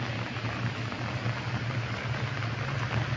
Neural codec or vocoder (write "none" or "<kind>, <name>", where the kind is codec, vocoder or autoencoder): none